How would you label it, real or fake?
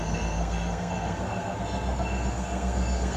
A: fake